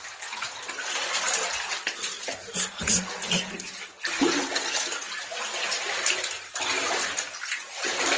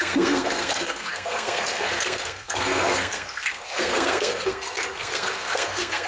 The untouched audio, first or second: first